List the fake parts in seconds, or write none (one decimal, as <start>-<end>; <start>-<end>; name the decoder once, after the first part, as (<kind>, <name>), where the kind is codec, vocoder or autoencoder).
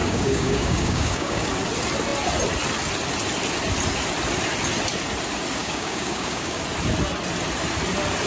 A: 0.0-1.5 (codec, DAC); 5.6-6.6